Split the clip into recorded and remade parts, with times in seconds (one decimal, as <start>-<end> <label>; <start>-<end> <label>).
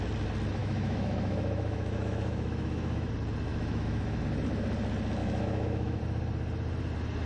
0.0-0.6 recorded; 0.6-3.1 remade; 3.1-3.5 recorded; 3.5-4.2 remade; 4.2-5.2 recorded; 5.2-6.0 remade; 6.0-7.3 recorded